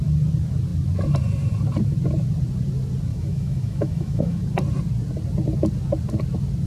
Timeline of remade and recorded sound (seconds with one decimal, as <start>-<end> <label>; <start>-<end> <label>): 0.0-3.1 recorded; 3.1-4.4 remade; 4.4-6.7 recorded